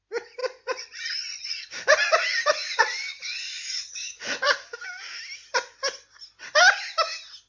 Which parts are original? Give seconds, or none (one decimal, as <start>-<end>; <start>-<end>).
0.0-0.4; 4.9-7.5